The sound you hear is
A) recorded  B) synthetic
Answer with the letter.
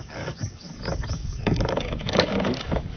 B